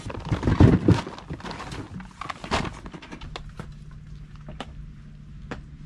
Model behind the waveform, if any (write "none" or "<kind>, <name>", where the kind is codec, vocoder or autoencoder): none